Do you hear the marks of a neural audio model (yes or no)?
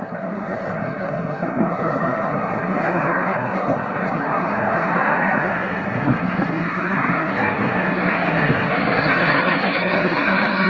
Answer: yes